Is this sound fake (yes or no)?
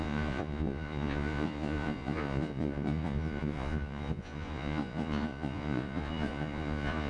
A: yes